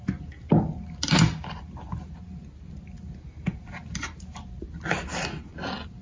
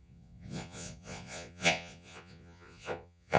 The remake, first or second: second